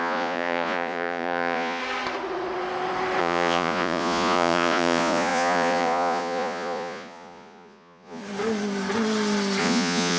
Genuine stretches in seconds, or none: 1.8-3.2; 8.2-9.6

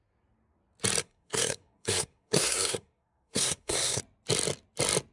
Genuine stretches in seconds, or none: 0.0-1.0; 4.0-5.1

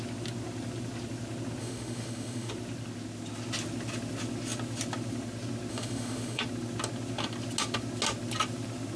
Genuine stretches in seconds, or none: 0.0-1.6; 2.5-5.7; 6.4-9.0

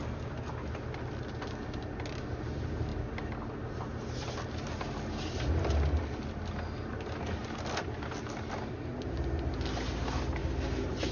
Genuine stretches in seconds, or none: 0.0-11.1

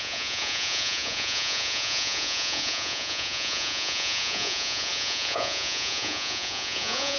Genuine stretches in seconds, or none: none

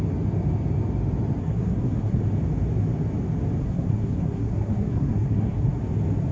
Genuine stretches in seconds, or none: 0.0-1.4; 2.2-3.6; 5.8-6.3

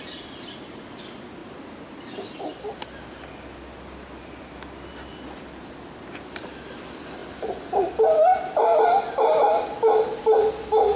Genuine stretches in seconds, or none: 0.0-11.0

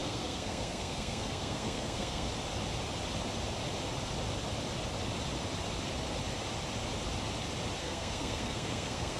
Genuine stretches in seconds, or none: 2.3-7.8